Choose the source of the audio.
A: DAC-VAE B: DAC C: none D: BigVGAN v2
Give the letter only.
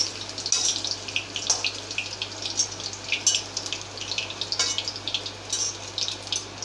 C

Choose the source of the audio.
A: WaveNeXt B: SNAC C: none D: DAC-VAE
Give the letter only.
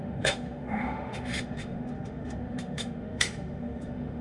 D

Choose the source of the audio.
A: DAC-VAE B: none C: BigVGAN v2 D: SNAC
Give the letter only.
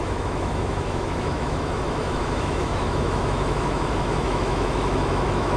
A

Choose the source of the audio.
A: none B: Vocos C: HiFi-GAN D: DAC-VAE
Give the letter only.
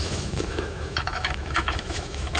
D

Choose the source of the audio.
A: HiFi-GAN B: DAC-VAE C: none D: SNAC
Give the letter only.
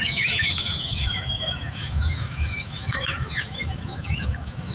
B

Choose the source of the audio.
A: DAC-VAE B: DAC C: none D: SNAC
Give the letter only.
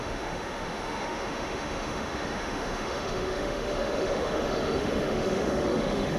A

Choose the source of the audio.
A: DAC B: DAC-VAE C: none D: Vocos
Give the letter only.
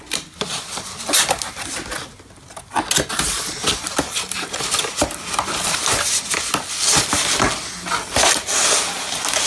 C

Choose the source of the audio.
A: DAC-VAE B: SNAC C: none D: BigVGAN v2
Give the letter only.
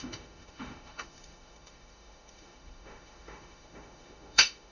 A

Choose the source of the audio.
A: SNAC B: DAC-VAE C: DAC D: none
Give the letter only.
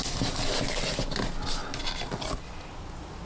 D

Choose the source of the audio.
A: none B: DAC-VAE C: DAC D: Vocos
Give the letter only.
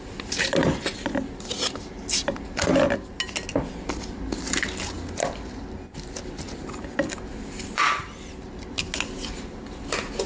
A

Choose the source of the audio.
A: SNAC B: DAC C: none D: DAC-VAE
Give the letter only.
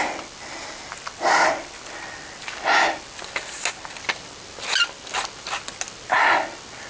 C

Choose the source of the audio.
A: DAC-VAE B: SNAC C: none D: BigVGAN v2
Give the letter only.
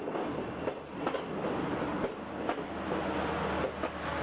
C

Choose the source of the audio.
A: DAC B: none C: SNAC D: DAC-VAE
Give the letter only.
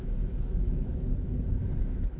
D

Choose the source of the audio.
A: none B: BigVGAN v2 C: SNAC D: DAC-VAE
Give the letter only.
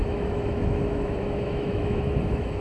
D